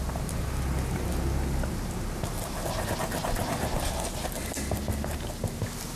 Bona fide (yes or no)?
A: yes